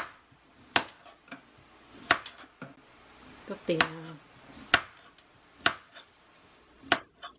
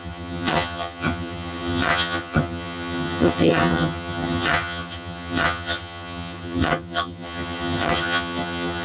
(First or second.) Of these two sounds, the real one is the first